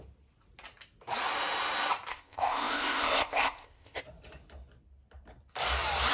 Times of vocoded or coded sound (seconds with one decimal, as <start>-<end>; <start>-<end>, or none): 2.1-4.0